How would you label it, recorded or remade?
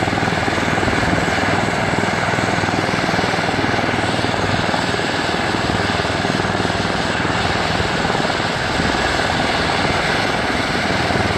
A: recorded